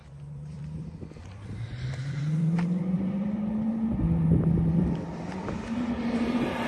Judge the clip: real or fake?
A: fake